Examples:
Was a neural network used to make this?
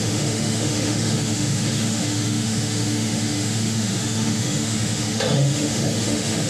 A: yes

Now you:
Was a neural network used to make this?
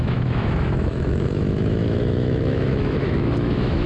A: yes